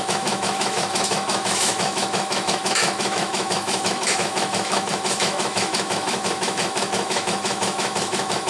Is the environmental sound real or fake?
fake